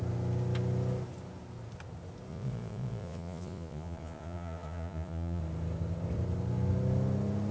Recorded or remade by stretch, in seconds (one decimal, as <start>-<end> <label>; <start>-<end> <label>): 0.0-2.3 recorded; 2.3-5.4 remade; 5.4-7.5 recorded